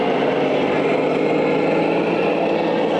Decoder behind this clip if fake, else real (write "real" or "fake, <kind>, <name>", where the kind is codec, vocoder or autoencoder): real